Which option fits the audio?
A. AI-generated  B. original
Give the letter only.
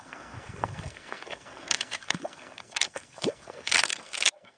A